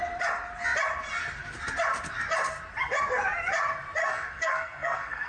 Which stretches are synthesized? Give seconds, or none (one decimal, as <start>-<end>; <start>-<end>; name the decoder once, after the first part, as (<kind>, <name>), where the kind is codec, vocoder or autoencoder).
4.0-5.3 (codec, SNAC)